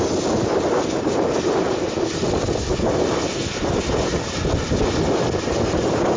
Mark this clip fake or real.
real